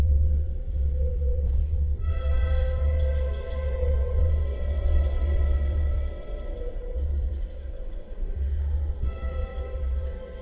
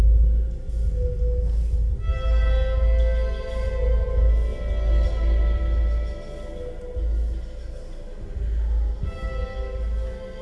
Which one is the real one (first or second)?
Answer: second